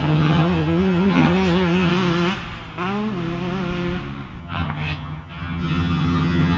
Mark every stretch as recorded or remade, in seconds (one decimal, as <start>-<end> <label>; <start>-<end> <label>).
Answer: 0.0-1.9 remade; 1.9-4.4 recorded; 4.4-6.6 remade